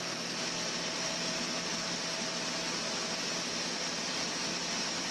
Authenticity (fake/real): real